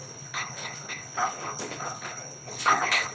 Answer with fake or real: fake